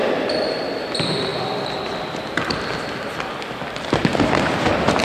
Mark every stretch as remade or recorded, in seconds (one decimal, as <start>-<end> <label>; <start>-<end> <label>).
0.0-0.7 remade; 0.7-4.1 recorded; 4.1-5.0 remade